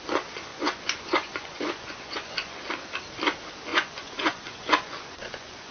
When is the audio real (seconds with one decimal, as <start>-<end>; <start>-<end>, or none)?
0.0-0.5; 2.6-3.7